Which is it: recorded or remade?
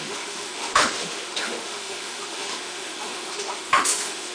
remade